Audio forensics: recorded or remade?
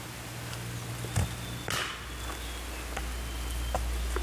recorded